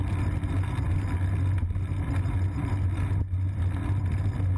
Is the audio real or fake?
real